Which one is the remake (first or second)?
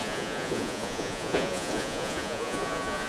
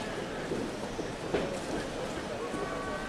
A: first